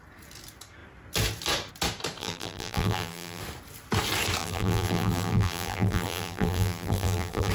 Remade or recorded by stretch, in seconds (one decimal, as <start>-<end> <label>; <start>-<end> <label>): 0.0-2.2 recorded; 2.2-3.4 remade; 3.4-4.4 recorded; 4.4-7.5 remade